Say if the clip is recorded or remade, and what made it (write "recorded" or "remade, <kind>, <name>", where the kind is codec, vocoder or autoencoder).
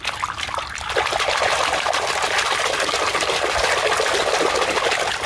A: recorded